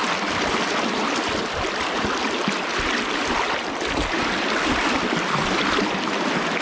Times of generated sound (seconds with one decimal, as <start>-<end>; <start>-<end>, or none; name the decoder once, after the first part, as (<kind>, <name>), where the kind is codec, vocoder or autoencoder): none